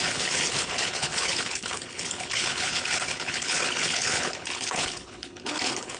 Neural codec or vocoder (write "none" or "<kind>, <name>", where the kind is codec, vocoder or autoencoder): codec, HILCodec